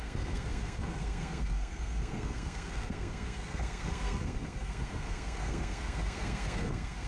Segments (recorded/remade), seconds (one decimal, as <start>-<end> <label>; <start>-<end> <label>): 0.0-7.1 remade